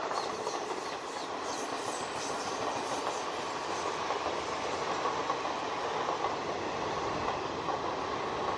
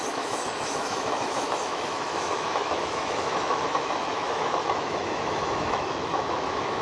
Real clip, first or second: first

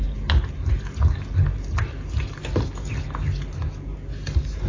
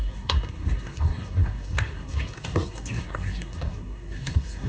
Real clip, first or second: first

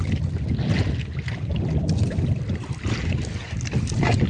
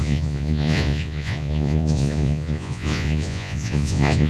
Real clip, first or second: first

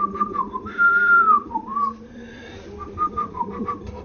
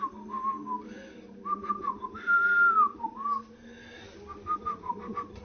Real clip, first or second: second